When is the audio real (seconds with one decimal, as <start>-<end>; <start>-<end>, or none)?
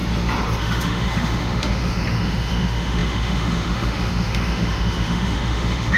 0.0-0.6